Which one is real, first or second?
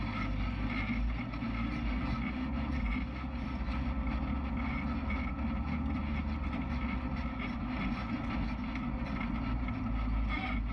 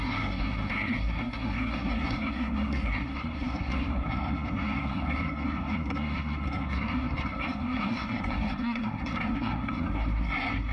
first